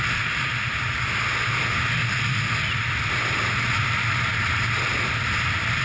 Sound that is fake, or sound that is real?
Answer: real